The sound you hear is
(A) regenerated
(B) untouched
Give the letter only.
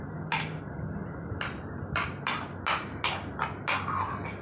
B